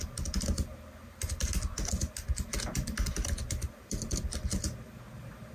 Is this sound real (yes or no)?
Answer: yes